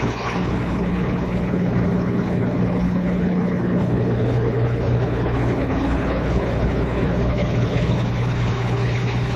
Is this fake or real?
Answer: fake